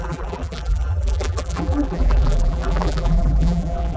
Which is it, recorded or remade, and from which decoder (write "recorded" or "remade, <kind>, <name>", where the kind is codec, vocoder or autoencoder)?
remade, vocoder, BigVGAN v2